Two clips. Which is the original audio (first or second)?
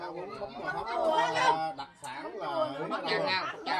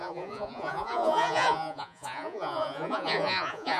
first